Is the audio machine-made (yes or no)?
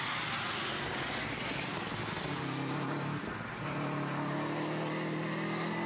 no